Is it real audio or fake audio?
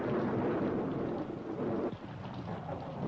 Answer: real